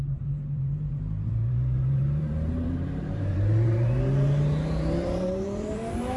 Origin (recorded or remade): remade